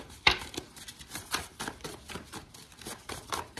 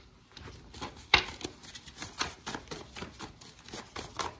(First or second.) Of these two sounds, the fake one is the first